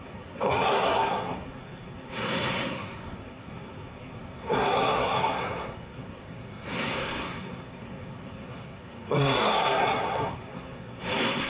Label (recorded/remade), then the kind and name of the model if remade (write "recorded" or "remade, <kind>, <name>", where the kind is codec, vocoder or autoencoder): remade, codec, SNAC